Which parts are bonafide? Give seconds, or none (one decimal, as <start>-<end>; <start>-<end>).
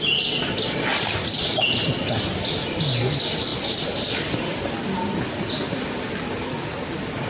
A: 0.0-0.9; 1.8-3.5; 4.7-7.3